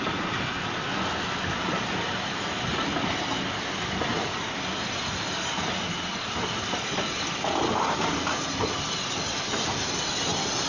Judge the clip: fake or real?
real